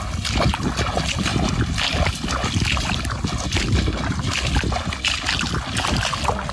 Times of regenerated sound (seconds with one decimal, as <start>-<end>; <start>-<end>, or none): none